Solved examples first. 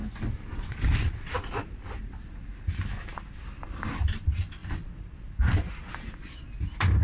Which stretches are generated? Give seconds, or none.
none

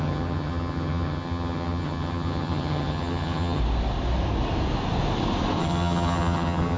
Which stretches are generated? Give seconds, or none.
0.0-3.6 (vocoder, HiFi-GAN); 5.6-6.8

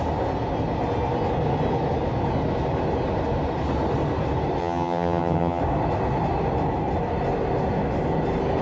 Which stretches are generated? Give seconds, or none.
4.6-5.6 (vocoder, HiFi-GAN)

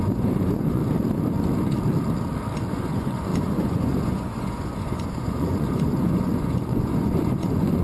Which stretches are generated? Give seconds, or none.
0.0-0.8 (vocoder, Vocos); 2.7-7.8

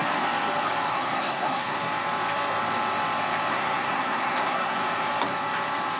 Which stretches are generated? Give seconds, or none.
0.9-1.8 (codec, SNAC); 3.5-4.8

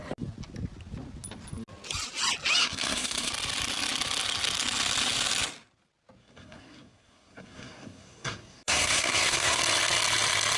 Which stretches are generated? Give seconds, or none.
2.6-3.3 (codec, SNAC); 6.2-9.6

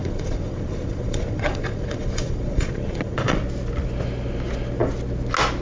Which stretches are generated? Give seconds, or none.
0.0-3.4 (vocoder, Vocos)

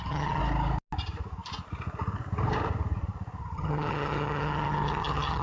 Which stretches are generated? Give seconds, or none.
0.0-0.4 (vocoder, HiFi-GAN); 3.4-5.4